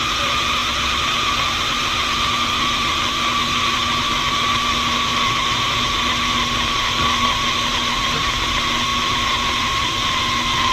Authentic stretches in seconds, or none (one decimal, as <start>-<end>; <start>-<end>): 0.0-10.7